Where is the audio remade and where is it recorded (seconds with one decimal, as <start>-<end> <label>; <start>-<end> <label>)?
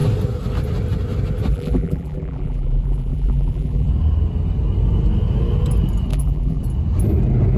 0.0-1.5 recorded; 1.5-3.9 remade; 3.9-6.1 recorded; 6.1-6.6 remade; 6.6-7.6 recorded